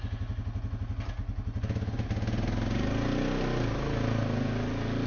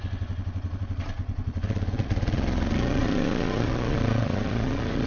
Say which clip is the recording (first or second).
first